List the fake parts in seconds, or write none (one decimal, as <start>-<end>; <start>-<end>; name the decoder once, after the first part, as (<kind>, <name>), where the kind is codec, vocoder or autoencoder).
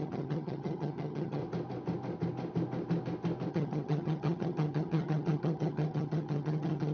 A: 0.0-1.4 (vocoder, HiFi-GAN); 3.5-6.9